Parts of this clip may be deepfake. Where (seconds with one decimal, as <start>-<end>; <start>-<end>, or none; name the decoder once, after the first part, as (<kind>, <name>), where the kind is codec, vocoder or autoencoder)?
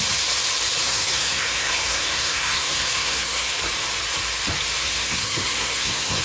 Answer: 0.9-3.6 (codec, SNAC); 4.8-6.2